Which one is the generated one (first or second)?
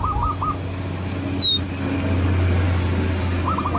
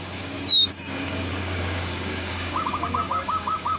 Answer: second